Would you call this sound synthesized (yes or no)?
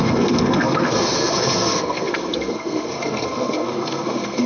yes